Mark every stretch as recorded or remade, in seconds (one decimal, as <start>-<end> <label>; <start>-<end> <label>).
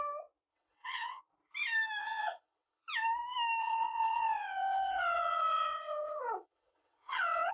0.0-0.5 recorded; 0.5-1.2 remade; 1.2-2.0 recorded; 2.0-2.8 remade; 2.8-3.6 recorded; 3.6-7.5 remade